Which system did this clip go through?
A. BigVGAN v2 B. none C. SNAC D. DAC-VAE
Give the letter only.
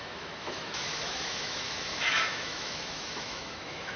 D